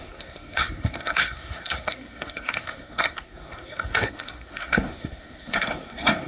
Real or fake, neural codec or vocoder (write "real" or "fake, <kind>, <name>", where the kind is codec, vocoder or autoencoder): fake, codec, SNAC